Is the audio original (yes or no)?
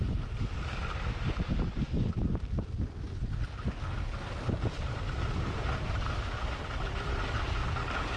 yes